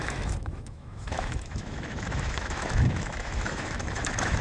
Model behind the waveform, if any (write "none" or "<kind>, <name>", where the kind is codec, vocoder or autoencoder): autoencoder, DAC-VAE